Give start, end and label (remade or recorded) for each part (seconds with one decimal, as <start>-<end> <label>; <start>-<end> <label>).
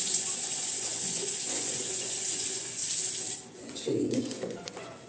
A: 0.0-2.8 remade; 2.8-3.5 recorded; 3.5-5.1 remade